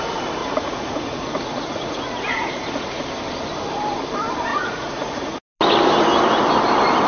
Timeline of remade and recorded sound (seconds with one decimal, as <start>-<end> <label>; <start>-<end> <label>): 0.0-0.4 recorded; 0.4-3.0 remade; 3.0-4.5 recorded; 4.5-5.4 remade; 5.4-7.1 recorded